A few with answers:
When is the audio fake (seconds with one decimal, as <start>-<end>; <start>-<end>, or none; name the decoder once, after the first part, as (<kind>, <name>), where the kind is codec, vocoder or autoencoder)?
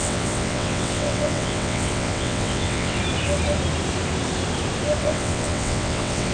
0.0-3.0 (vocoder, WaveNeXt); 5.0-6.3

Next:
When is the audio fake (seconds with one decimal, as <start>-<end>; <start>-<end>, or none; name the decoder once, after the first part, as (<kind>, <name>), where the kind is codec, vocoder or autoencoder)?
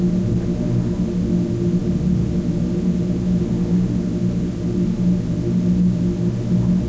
none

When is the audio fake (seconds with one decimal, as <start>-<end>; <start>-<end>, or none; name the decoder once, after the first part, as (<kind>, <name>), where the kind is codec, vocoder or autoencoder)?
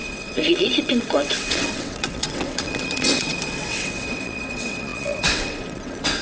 0.0-6.2 (vocoder, WaveNeXt)